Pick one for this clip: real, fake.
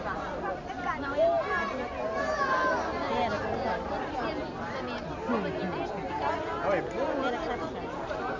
real